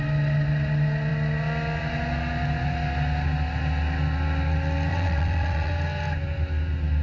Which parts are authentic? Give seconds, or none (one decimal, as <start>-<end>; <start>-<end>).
0.0-4.9; 5.7-7.0